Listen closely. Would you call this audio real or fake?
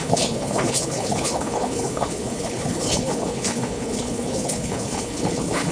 fake